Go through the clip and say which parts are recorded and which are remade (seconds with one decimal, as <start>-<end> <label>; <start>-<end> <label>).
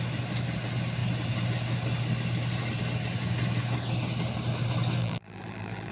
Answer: 0.0-5.0 recorded; 5.0-5.9 remade